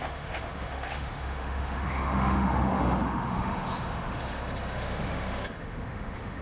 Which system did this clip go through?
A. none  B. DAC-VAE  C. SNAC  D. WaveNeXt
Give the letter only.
B